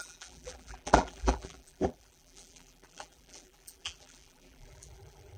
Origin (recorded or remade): remade